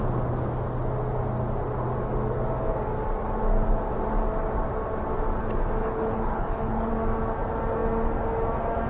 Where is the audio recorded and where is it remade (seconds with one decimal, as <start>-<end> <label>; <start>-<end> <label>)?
0.0-5.8 recorded; 5.8-6.9 remade; 6.9-8.9 recorded

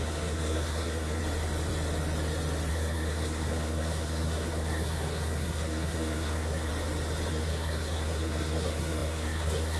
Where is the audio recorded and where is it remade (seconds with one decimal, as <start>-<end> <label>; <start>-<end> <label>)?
0.0-1.2 remade; 1.2-2.7 recorded; 2.7-6.7 remade; 6.7-7.3 recorded; 7.3-9.8 remade

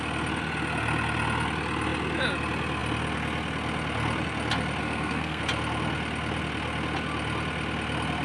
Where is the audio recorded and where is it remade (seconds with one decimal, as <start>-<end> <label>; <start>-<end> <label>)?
0.0-4.8 recorded; 4.8-5.4 remade; 5.4-8.2 recorded

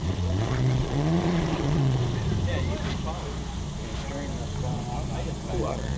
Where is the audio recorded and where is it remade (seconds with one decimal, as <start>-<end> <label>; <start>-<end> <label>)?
0.0-2.0 remade; 2.0-5.6 recorded; 5.6-6.0 remade

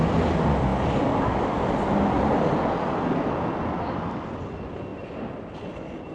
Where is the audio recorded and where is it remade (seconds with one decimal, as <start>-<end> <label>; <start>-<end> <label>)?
0.0-0.7 remade; 0.7-4.4 recorded; 4.4-6.1 remade

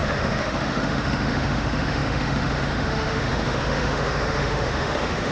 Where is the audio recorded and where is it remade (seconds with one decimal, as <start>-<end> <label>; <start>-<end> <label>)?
0.0-5.3 remade

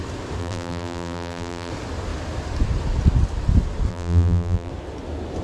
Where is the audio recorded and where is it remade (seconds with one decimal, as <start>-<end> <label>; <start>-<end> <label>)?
0.0-0.4 recorded; 0.4-1.7 remade; 1.7-3.9 recorded; 3.9-4.7 remade; 4.7-5.4 recorded

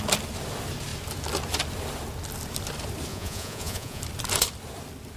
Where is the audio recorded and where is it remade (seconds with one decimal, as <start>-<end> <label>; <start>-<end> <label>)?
0.0-3.1 recorded; 3.1-4.0 remade; 4.0-5.2 recorded